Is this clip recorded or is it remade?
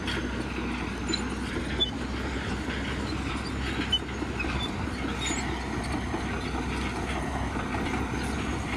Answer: recorded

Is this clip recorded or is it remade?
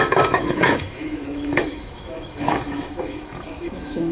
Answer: remade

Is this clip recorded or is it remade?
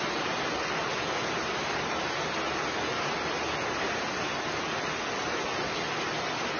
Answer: recorded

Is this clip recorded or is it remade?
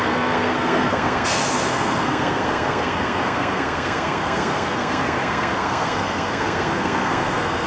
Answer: remade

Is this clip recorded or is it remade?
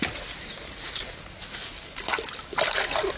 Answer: recorded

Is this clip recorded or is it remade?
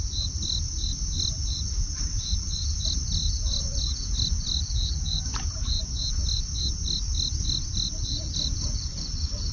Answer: recorded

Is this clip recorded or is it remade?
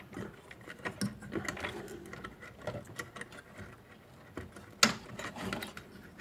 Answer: recorded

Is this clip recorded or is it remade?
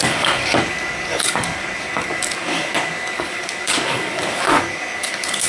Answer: remade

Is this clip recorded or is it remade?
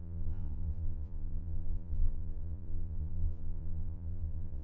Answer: remade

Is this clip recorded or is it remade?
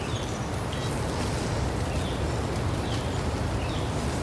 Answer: recorded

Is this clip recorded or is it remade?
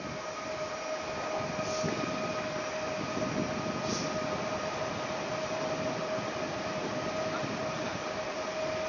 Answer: recorded